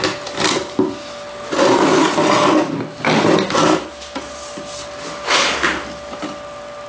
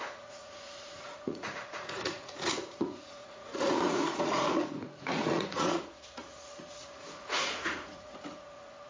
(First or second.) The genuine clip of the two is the first